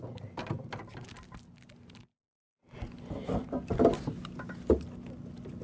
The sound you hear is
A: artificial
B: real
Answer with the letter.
B